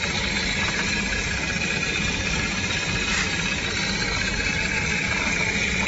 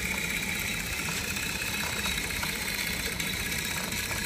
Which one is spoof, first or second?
second